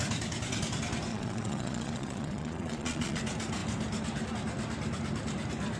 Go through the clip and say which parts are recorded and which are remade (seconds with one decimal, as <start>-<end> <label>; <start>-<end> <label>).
0.0-1.1 recorded; 1.1-3.2 remade; 3.2-5.8 recorded